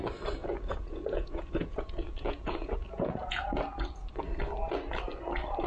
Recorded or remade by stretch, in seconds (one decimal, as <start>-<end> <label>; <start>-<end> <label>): 0.0-0.4 recorded; 0.4-3.4 remade; 3.4-5.7 recorded